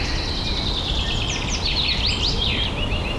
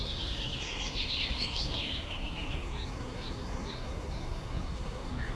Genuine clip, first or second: first